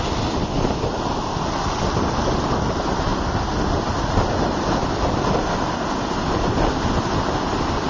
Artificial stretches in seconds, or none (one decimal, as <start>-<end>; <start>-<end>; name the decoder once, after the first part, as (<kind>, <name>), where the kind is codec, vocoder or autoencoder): none